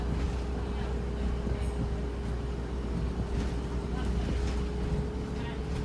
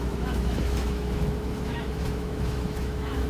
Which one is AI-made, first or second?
second